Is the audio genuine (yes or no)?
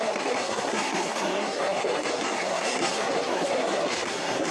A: no